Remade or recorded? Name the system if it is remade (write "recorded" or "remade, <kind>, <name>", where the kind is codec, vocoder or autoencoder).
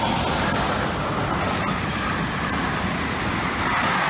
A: recorded